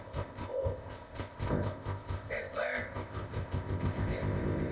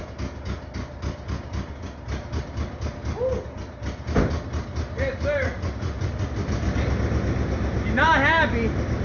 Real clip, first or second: second